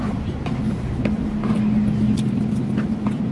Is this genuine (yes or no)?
yes